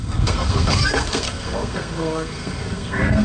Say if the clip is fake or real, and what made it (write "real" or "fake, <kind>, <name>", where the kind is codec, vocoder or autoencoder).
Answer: fake, codec, SNAC